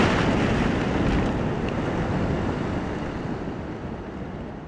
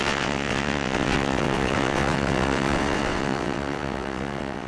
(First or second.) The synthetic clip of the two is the second